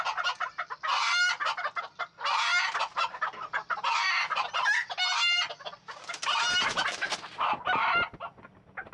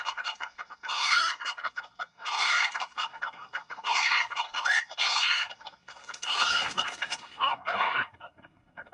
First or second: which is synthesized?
second